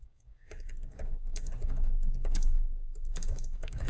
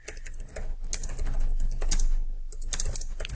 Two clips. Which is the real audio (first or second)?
second